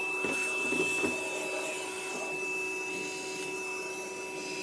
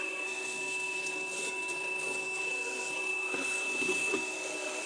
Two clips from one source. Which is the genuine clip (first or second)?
first